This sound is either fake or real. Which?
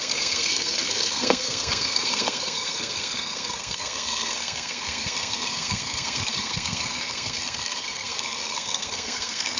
fake